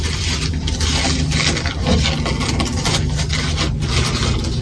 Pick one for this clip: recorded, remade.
recorded